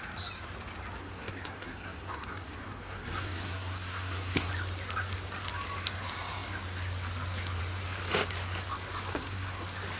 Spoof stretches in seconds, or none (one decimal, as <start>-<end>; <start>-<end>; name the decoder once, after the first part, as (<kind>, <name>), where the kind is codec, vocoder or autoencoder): 1.0-4.5 (codec, SNAC); 9.1-9.6